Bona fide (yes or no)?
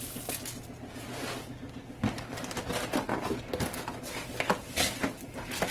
yes